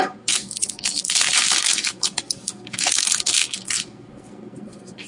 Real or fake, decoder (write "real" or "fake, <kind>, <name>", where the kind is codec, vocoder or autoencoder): fake, codec, SNAC